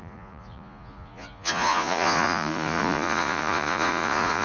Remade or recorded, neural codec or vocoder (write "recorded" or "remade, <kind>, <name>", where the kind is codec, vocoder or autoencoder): remade, vocoder, Vocos